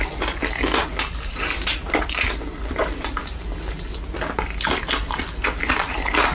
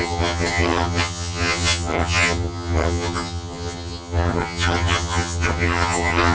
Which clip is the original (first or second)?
first